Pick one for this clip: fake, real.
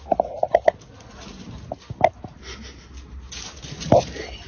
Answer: real